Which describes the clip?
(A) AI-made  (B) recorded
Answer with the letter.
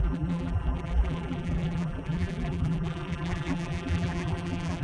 A